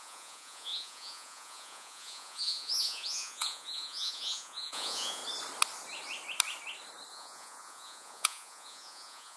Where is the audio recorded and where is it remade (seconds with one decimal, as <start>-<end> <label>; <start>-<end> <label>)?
0.0-5.2 remade; 5.2-7.1 recorded; 7.1-9.4 remade